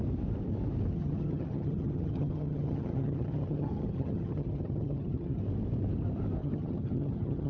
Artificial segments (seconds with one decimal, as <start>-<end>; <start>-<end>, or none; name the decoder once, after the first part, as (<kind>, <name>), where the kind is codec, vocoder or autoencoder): 0.9-5.4 (vocoder, HiFi-GAN); 6.4-7.5